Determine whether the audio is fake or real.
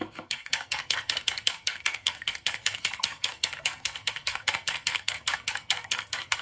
fake